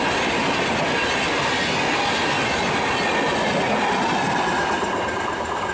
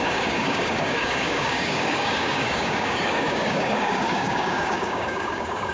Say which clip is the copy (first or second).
second